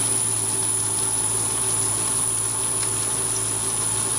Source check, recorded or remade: recorded